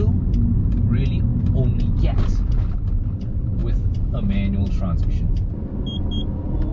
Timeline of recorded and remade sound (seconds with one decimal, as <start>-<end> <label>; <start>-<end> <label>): 0.0-6.7 recorded